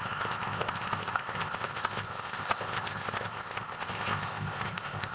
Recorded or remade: remade